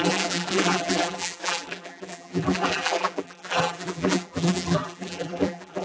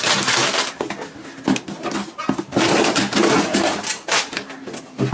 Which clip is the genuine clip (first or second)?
second